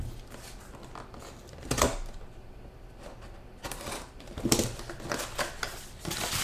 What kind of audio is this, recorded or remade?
recorded